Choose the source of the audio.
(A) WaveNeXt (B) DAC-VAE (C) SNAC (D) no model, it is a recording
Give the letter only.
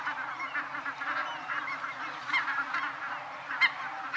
D